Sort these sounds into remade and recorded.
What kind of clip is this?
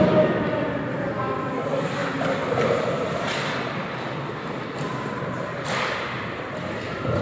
recorded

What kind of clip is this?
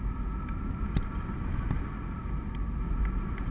recorded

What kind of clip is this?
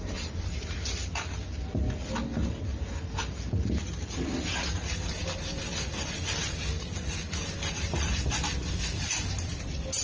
recorded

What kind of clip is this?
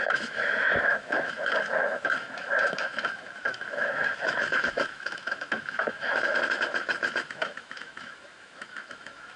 remade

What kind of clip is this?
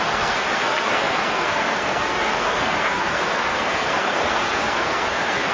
remade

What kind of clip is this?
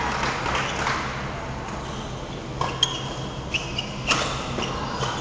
recorded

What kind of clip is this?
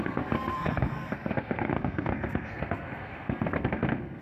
remade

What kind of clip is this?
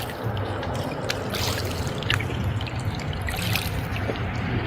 recorded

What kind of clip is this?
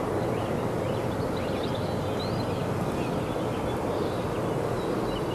recorded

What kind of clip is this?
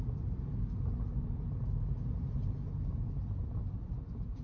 recorded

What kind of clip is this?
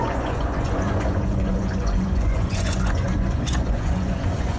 remade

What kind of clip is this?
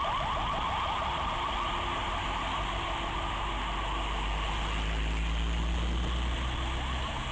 recorded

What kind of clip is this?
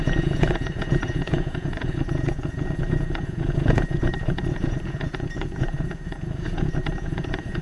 remade